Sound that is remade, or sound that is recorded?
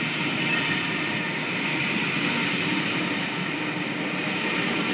recorded